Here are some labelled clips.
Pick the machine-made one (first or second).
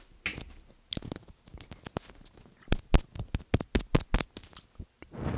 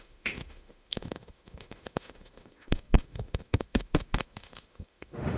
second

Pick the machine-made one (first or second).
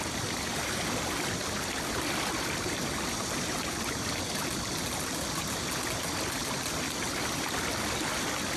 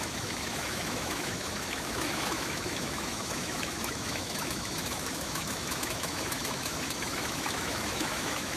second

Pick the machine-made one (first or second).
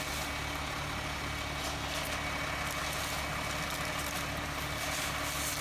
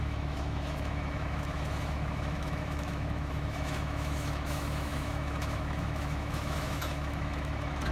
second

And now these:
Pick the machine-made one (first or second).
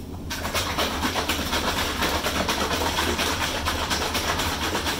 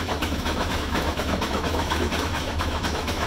second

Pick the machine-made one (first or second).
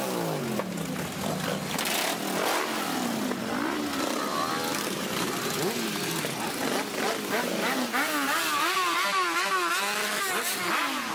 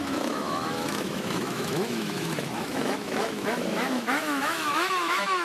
second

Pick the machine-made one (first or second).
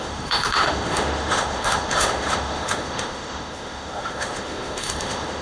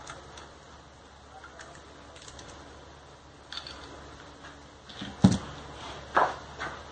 first